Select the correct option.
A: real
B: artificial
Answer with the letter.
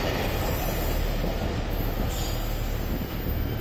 A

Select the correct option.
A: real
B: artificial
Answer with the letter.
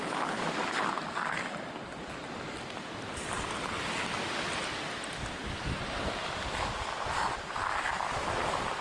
A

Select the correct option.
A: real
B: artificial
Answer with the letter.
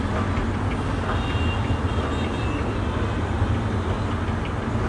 A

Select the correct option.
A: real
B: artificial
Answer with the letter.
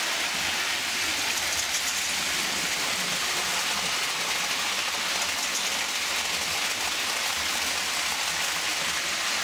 A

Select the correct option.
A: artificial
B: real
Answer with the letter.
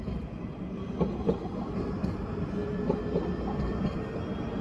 B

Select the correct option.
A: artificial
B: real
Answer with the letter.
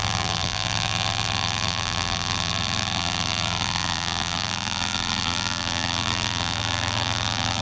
A